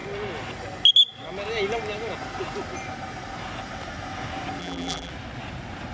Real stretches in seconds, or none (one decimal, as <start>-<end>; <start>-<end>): 0.0-4.6; 5.1-5.9